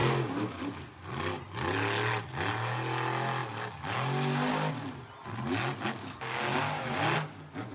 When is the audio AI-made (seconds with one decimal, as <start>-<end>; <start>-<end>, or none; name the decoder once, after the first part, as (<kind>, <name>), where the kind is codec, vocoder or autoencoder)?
0.0-0.6 (codec, DAC); 6.0-6.8